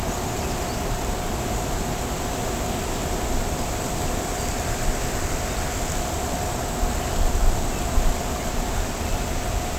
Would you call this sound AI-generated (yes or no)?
no